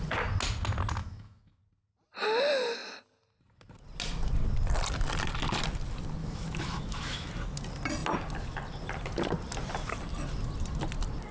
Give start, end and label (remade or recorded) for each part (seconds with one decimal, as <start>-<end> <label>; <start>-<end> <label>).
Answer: 0.0-1.0 recorded; 1.0-1.6 remade; 1.6-6.2 recorded; 6.2-7.3 remade; 7.3-11.3 recorded